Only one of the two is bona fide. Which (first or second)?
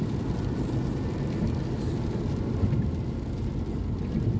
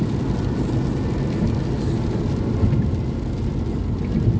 second